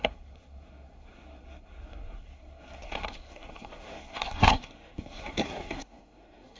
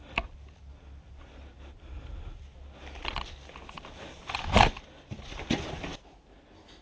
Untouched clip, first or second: second